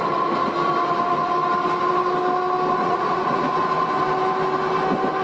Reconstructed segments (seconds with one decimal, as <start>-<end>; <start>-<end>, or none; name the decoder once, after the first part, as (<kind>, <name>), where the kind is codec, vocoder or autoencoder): 2.8-3.6 (vocoder, Vocos)